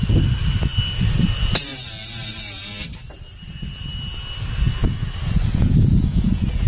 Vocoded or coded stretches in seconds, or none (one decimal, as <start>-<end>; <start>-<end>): 4.8-6.7